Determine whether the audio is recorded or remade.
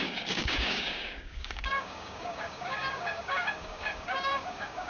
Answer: remade